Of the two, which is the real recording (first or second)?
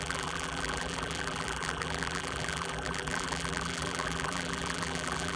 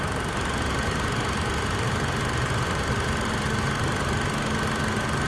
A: second